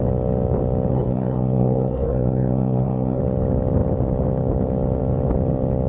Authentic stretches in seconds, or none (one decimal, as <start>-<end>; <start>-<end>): 0.0-0.9; 3.2-5.9